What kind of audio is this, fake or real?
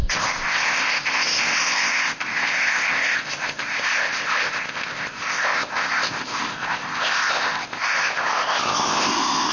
fake